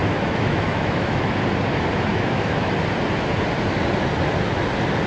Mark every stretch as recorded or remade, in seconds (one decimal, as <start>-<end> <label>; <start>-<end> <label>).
0.0-1.4 remade; 1.4-2.1 recorded; 2.1-2.7 remade; 2.7-5.1 recorded